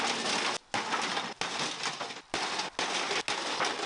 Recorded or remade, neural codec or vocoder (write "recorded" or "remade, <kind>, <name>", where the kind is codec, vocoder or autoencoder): recorded